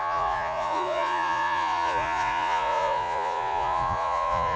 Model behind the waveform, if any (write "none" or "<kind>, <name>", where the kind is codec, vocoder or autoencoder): vocoder, Vocos